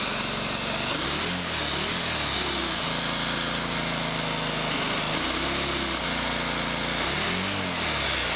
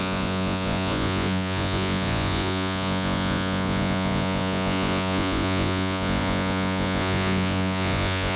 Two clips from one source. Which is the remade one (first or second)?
second